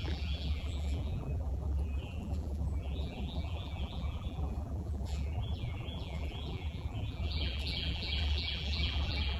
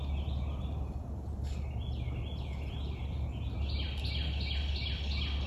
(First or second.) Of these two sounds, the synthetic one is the first